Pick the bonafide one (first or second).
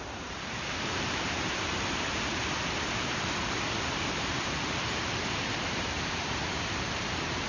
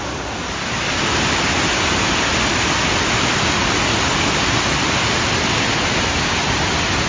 second